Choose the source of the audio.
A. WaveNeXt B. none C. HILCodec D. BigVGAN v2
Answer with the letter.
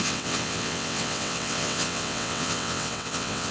A